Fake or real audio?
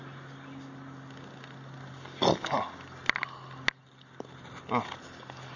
real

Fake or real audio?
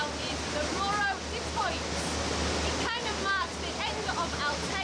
real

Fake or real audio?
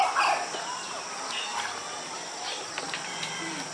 real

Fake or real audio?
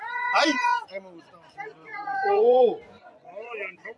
fake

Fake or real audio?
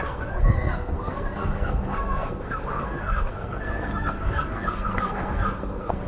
fake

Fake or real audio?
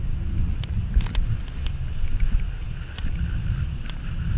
real